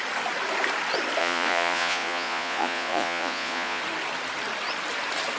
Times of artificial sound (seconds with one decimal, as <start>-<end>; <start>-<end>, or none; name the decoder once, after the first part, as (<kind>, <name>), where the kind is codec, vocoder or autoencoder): 1.2-3.8 (vocoder, Vocos)